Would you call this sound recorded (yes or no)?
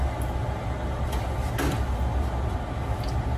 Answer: yes